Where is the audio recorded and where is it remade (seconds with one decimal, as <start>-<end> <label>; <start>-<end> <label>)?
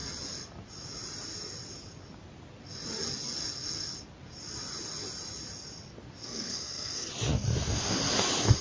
0.0-6.2 recorded; 6.2-7.1 remade; 7.1-8.6 recorded